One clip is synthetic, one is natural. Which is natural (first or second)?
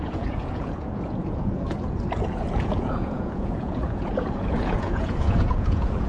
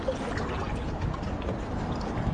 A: second